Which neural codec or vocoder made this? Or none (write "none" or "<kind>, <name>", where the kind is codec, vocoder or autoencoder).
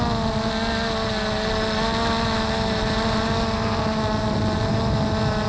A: none